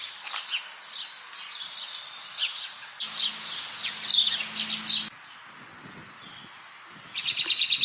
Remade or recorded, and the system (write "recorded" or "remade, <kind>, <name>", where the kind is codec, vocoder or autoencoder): recorded